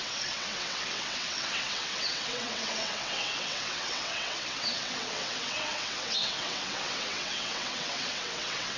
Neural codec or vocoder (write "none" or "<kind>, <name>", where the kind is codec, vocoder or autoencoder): vocoder, WaveNeXt